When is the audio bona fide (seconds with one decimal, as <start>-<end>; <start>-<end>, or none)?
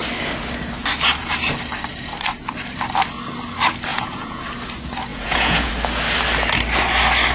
0.0-3.9; 4.4-5.1; 5.7-7.3